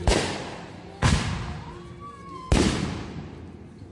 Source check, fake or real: real